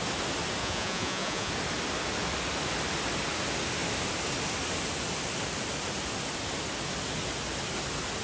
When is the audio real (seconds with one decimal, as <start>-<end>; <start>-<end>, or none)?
0.0-0.6; 1.5-8.2